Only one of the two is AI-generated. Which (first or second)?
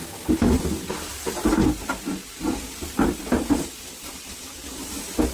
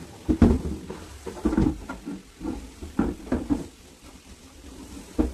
second